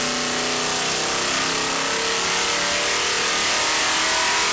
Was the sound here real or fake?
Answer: real